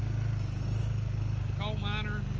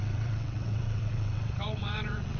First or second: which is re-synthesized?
second